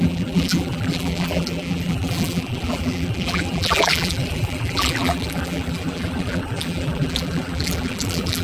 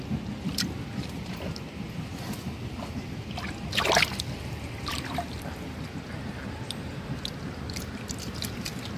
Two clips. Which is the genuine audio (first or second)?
second